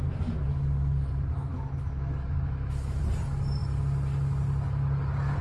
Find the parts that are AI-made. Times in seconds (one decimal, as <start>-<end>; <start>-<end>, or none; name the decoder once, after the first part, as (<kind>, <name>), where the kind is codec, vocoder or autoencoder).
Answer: 1.5-3.0 (autoencoder, DAC-VAE)